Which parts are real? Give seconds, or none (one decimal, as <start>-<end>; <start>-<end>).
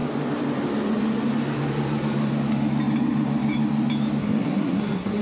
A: 0.0-4.2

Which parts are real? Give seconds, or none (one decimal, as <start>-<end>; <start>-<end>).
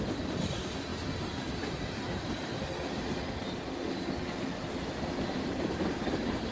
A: 0.0-6.5